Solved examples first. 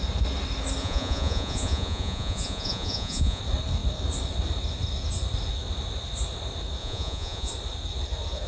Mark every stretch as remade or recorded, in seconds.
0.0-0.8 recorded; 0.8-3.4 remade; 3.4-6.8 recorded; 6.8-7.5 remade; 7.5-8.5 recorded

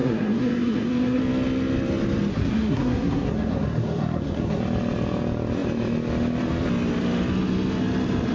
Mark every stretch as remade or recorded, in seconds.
0.0-1.2 remade; 1.2-2.3 recorded; 2.3-4.6 remade; 4.6-8.3 recorded

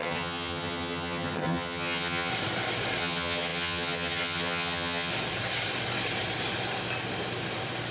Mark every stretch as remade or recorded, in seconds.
0.0-2.3 remade; 2.3-3.0 recorded; 3.0-5.1 remade; 5.1-7.9 recorded

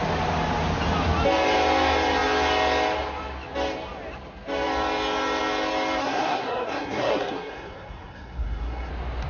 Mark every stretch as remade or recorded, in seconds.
0.0-6.0 recorded; 6.0-8.9 remade; 8.9-9.3 recorded

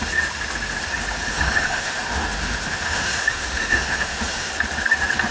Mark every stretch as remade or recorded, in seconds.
0.0-1.3 recorded; 1.3-4.5 remade; 4.5-5.3 recorded

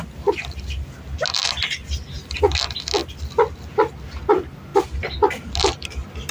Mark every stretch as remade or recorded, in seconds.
0.0-6.3 recorded

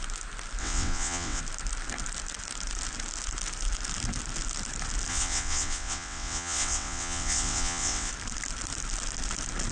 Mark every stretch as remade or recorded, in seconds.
0.0-0.6 recorded; 0.6-1.4 remade; 1.4-5.1 recorded; 5.1-8.1 remade; 8.1-9.7 recorded